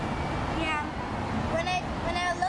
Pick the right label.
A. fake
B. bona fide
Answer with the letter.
B